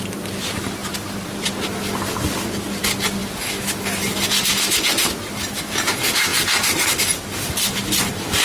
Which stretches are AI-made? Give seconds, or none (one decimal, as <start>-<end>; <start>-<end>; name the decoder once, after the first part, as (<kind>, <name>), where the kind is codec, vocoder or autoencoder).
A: none